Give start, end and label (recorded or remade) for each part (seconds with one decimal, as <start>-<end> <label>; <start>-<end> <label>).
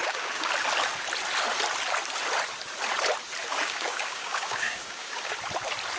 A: 0.0-0.5 remade; 0.5-3.5 recorded; 3.5-5.3 remade; 5.3-6.0 recorded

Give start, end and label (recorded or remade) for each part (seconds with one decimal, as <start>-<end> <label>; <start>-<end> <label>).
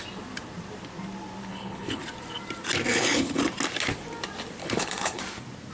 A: 0.0-1.5 recorded; 1.5-2.0 remade; 2.0-2.9 recorded; 2.9-3.4 remade; 3.4-4.6 recorded; 4.6-5.2 remade; 5.2-5.7 recorded